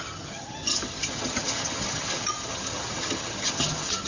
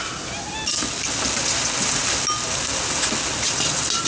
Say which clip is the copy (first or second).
first